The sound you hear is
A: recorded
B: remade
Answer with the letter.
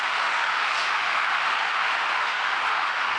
B